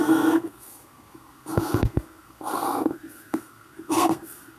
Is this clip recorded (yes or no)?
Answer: no